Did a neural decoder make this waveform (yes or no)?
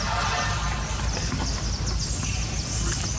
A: no